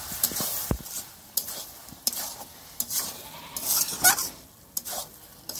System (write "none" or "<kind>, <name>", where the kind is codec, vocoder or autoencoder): none